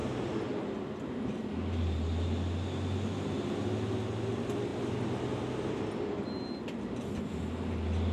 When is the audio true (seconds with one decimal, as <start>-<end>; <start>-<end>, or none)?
0.0-8.1